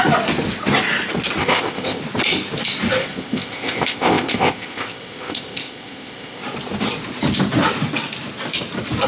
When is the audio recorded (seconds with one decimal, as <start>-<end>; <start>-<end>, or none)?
0.0-1.4; 2.0-3.0; 6.4-9.1

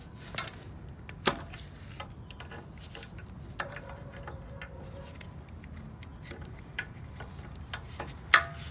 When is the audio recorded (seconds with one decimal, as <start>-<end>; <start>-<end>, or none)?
0.0-6.1; 7.3-8.7

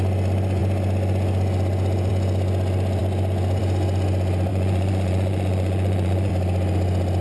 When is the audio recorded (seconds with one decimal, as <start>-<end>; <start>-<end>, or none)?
0.0-4.5; 6.3-7.2

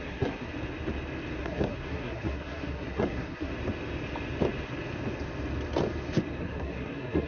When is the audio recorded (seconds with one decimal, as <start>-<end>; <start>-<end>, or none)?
0.5-1.4; 3.5-6.4

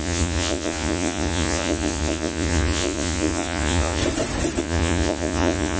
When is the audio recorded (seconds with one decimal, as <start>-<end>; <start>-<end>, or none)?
4.0-4.6